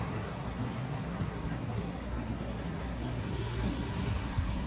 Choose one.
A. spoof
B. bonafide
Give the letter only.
A